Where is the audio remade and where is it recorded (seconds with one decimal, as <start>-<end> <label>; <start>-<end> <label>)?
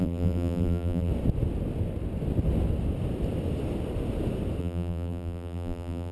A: 0.0-1.1 remade; 1.1-4.6 recorded; 4.6-6.1 remade